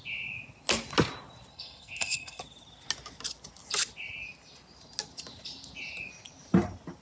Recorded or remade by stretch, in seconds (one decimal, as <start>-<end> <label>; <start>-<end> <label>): 0.0-1.5 recorded; 1.5-2.4 remade; 2.4-7.0 recorded